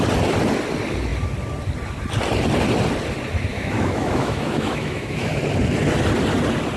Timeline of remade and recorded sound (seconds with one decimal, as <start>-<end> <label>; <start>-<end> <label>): 0.0-3.5 recorded; 3.5-5.4 remade; 5.4-6.8 recorded